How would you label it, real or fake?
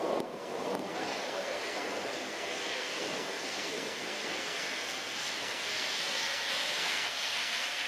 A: fake